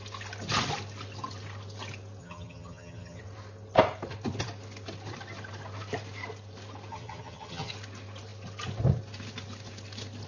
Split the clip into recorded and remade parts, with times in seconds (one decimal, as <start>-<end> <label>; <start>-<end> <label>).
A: 0.0-2.2 recorded; 2.2-3.2 remade; 3.2-6.9 recorded; 6.9-7.7 remade; 7.7-10.3 recorded